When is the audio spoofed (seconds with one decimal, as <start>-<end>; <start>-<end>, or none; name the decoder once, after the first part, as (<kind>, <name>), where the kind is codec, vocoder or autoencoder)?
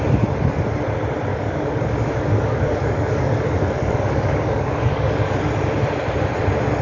1.3-5.4 (codec, DAC)